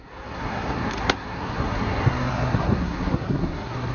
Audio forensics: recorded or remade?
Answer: remade